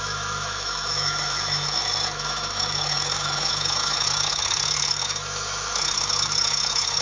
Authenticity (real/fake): fake